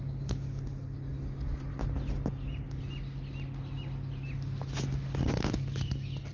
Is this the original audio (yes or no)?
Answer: yes